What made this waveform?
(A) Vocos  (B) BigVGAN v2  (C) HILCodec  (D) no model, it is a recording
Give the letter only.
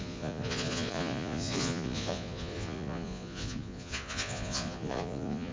A